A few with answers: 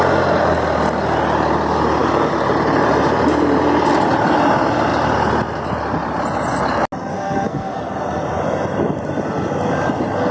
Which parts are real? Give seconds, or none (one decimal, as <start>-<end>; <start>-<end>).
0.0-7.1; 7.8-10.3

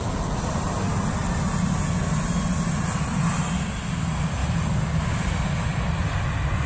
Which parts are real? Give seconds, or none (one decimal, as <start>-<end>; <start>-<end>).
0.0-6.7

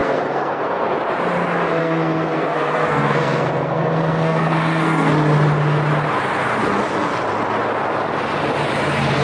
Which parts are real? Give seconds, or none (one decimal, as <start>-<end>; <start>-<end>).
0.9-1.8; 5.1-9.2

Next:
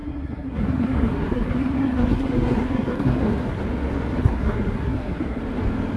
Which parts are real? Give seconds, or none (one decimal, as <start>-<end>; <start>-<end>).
3.6-4.2; 5.4-6.0

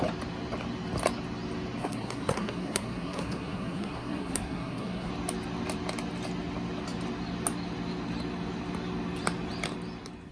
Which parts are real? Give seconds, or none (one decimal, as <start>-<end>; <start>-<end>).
0.0-1.8; 5.1-10.3

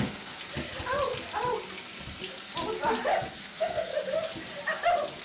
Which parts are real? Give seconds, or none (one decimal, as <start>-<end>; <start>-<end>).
0.4-3.4; 3.9-5.2